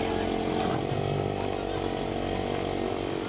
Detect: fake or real real